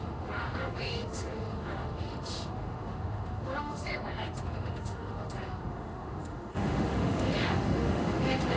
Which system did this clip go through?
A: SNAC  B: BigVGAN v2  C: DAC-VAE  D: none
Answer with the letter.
C